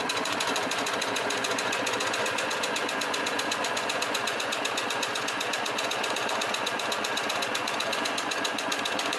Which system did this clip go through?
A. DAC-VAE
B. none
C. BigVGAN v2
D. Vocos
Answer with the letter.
D